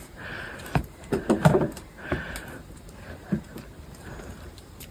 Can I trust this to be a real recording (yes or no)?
no